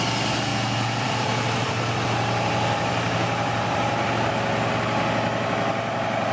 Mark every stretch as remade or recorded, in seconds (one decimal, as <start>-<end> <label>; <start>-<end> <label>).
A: 0.0-0.5 recorded; 0.5-4.3 remade; 4.3-6.3 recorded